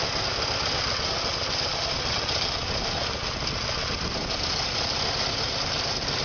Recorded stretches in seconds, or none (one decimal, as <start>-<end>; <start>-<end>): 0.0-6.2